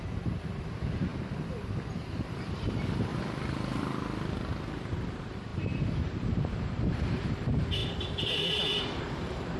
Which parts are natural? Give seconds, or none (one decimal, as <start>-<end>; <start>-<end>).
1.1-2.3; 3.1-4.7